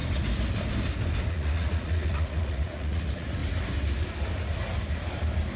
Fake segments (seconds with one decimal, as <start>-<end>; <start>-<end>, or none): 1.3-3.4